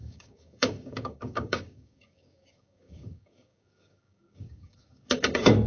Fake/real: fake